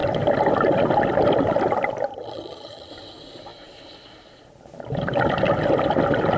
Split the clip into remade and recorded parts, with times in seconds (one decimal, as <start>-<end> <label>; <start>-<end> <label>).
0.0-2.1 recorded; 2.1-2.9 remade; 2.9-6.4 recorded